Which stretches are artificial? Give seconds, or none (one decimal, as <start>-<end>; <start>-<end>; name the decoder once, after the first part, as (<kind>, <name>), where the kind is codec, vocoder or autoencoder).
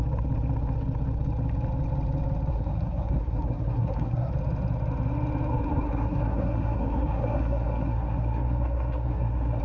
2.5-4.3 (codec, SNAC); 5.5-9.6